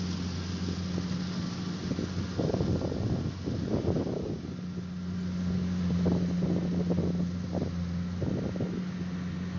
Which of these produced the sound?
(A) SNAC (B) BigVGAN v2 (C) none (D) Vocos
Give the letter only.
C